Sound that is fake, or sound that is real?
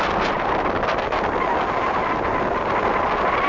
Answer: real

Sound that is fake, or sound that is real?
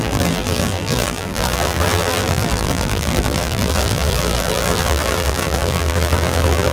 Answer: fake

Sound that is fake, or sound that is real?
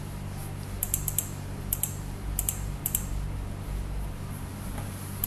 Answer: real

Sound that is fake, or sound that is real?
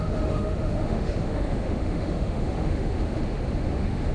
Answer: fake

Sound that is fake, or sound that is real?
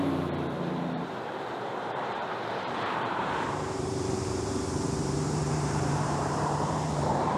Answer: fake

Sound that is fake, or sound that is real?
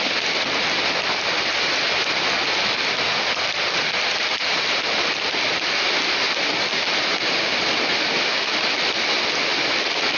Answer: real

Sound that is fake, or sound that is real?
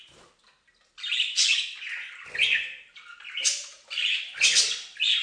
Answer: real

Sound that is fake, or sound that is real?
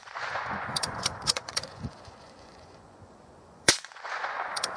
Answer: fake